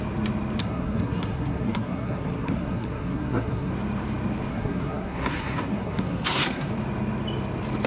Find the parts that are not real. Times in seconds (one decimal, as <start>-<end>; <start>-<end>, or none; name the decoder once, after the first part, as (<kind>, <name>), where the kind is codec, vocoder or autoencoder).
0.6-3.7 (codec, SNAC); 4.5-6.7